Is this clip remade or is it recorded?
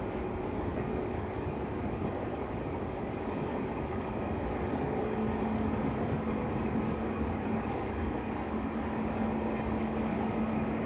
remade